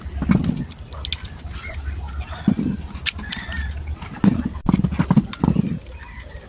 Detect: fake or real real